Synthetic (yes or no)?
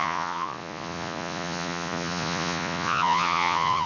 yes